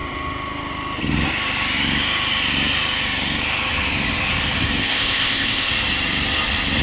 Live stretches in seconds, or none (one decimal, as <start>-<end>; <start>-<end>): 0.0-4.8; 5.7-6.8

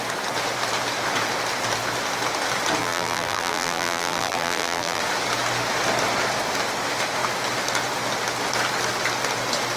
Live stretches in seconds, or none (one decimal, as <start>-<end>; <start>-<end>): 0.0-2.8; 5.0-9.8

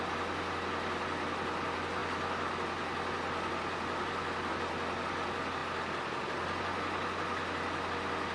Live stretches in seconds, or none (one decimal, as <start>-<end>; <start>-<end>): 0.0-8.3